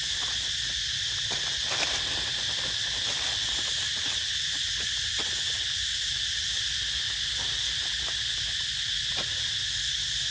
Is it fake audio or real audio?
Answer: real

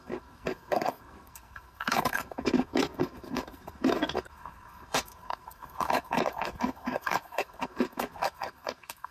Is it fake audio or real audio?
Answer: fake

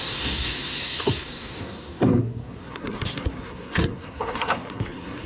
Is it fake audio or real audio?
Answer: fake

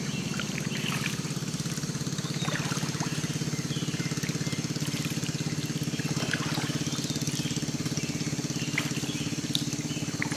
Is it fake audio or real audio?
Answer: real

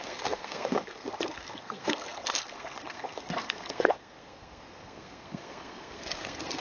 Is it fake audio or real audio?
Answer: fake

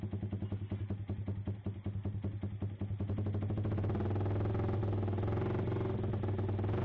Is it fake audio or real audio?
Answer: real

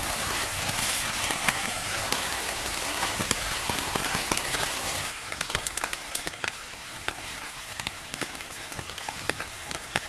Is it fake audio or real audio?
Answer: fake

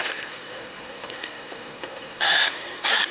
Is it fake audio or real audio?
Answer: fake